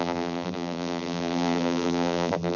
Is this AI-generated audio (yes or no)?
yes